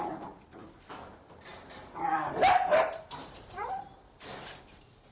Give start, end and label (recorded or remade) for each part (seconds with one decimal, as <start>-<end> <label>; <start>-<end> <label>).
0.0-1.5 recorded; 1.5-4.6 remade; 4.6-5.1 recorded